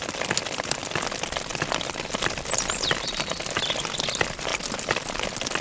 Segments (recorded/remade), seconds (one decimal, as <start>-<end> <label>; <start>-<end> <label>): 0.0-5.6 recorded

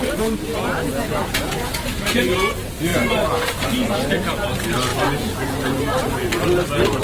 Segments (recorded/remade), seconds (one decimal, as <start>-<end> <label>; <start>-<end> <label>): 0.0-0.5 recorded; 0.5-2.5 remade; 2.5-2.9 recorded; 2.9-3.9 remade; 3.9-4.9 recorded; 4.9-5.5 remade; 5.5-7.0 recorded

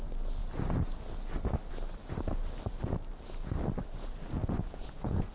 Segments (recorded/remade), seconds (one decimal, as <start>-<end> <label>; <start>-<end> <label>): 0.0-4.4 recorded; 4.4-5.3 remade